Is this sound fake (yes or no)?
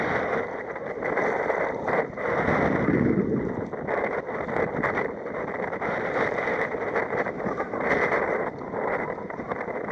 no